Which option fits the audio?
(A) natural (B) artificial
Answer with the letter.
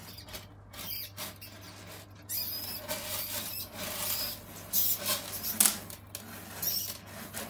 A